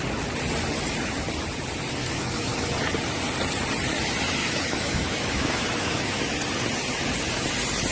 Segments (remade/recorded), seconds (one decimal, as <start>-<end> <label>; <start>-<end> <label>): 0.0-2.0 recorded; 2.0-2.7 remade; 2.7-4.4 recorded; 4.4-6.2 remade; 6.2-7.9 recorded